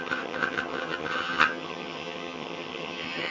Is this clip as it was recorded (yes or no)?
no